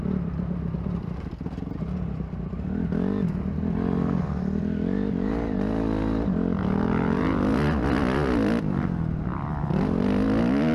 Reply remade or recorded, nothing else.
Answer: recorded